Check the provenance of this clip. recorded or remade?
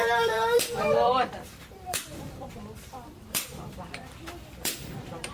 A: remade